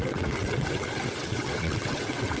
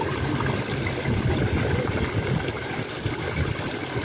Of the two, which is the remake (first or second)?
first